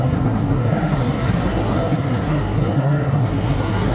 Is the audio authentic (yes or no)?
no